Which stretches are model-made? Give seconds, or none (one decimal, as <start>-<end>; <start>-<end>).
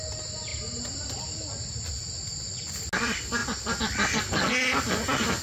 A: none